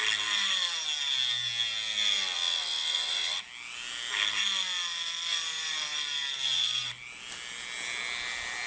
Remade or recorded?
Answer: recorded